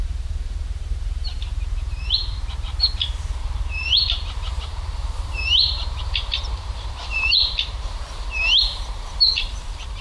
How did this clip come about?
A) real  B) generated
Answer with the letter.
B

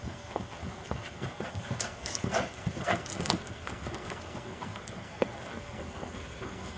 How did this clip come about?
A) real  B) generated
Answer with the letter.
B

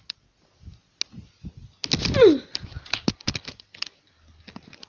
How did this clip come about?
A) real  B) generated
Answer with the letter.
A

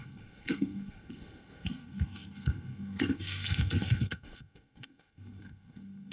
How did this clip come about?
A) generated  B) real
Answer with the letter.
A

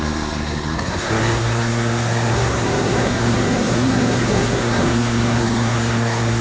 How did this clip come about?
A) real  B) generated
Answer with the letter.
B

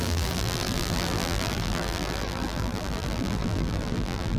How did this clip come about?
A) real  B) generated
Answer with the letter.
B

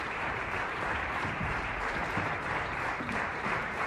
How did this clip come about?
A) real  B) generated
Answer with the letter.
B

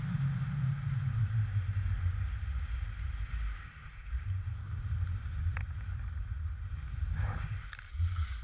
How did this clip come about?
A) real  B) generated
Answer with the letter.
A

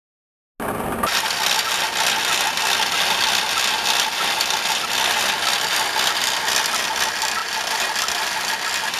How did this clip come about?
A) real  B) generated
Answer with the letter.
A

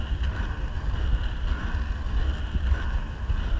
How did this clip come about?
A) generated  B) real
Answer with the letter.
B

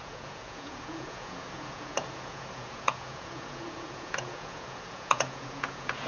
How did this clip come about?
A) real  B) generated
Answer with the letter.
B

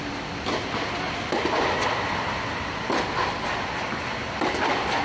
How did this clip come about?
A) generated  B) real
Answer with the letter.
B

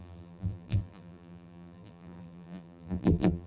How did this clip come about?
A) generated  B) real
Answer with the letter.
A